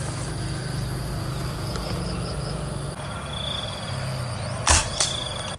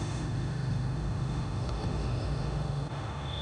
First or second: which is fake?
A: second